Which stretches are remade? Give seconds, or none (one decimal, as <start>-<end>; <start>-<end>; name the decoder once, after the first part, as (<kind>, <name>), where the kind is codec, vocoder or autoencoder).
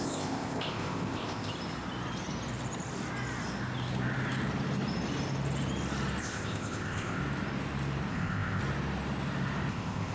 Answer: 0.0-1.5 (codec, ZipCodec); 6.2-7.2; 8.1-8.6; 9.7-10.1